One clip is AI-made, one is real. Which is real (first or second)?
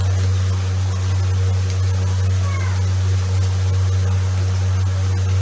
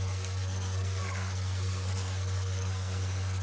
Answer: first